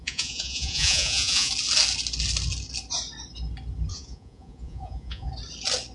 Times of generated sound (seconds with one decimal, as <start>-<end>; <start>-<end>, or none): 0.0-1.5; 3.9-5.3